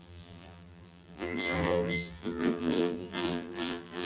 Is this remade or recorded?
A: remade